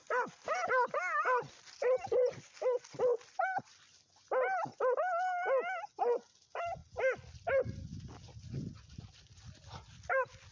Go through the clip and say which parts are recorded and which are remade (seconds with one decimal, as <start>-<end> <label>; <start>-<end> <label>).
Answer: 0.0-10.5 recorded